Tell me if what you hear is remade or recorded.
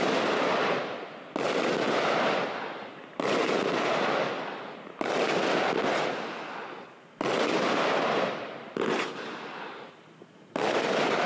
recorded